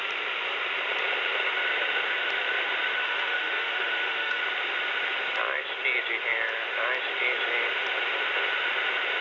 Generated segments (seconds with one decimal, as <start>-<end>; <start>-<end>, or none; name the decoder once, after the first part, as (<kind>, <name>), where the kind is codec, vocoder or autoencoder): 2.9-4.4 (autoencoder, DAC-VAE)